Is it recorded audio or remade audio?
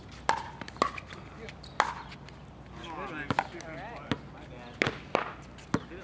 recorded